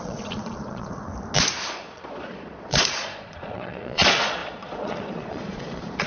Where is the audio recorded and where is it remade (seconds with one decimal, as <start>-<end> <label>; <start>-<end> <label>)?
0.0-1.1 remade; 1.1-1.7 recorded; 1.7-6.1 remade

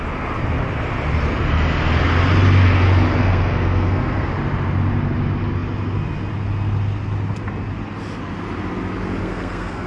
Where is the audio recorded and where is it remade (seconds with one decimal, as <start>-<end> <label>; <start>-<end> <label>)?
0.0-3.2 recorded; 3.2-4.3 remade; 4.3-9.2 recorded; 9.2-9.9 remade

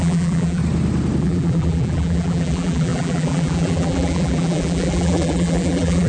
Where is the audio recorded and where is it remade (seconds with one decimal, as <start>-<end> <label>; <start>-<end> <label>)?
0.0-0.6 remade; 0.6-1.2 recorded; 1.2-6.1 remade

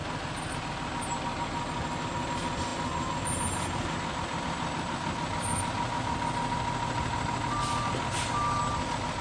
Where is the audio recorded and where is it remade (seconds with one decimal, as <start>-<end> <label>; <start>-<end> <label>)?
0.0-9.2 recorded

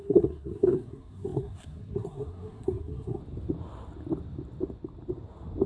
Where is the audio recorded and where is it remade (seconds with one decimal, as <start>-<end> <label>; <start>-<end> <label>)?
0.0-3.2 remade; 3.2-5.7 recorded